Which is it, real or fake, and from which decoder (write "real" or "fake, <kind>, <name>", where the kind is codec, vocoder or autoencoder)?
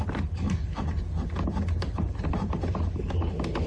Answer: real